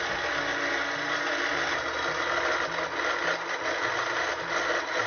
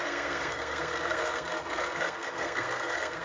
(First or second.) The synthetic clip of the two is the second